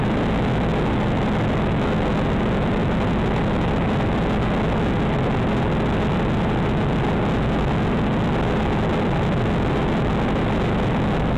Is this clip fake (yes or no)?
no